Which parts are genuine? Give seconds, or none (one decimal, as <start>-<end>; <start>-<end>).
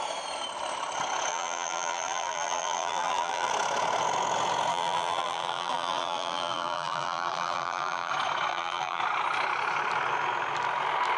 0.0-1.3; 3.5-4.7; 8.1-8.5; 9.0-11.2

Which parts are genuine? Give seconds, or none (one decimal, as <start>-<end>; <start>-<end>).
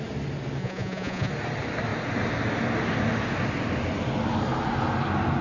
0.0-0.6; 1.3-5.4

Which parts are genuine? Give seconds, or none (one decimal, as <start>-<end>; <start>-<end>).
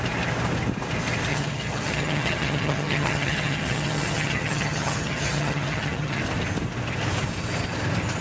0.0-1.3; 6.2-8.2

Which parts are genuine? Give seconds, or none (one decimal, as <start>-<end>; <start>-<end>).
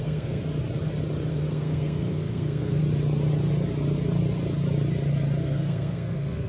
0.4-1.3; 2.8-5.4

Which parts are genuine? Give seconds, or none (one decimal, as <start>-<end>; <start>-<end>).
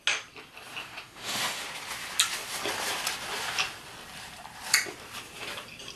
0.0-0.8; 1.6-6.0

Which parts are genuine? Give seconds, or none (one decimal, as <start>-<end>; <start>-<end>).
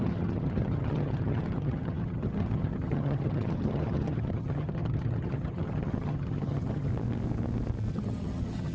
6.9-7.9